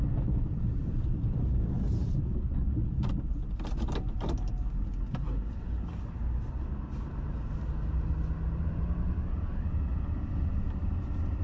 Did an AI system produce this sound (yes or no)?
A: no